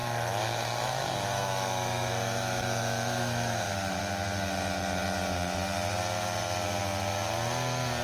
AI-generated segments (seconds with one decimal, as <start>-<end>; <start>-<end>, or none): 0.0-4.0

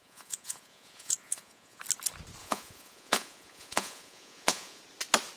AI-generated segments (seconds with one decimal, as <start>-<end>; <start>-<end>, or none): 0.0-1.8; 2.4-4.8

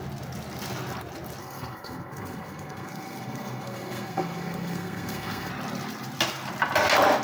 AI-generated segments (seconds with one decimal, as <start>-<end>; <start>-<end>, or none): 1.4-5.5

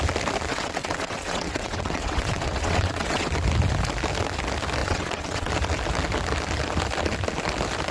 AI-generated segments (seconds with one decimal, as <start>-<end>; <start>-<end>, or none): 0.5-3.3; 4.8-5.5